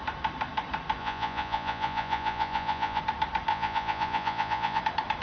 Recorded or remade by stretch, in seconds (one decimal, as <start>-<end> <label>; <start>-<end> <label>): 0.0-1.0 recorded; 1.0-3.0 remade; 3.0-3.5 recorded; 3.5-4.8 remade; 4.8-5.2 recorded